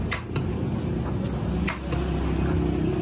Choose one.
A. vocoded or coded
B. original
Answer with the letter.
B